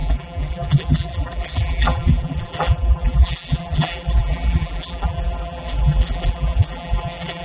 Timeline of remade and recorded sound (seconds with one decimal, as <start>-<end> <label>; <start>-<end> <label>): 0.0-7.4 remade